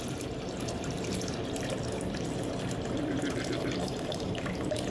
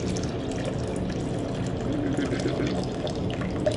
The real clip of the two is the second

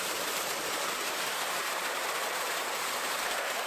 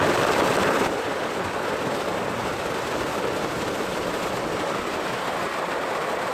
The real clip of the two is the second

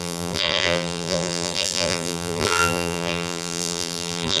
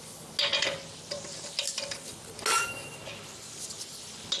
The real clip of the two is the second